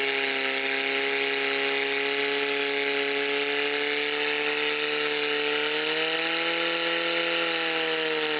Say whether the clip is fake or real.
real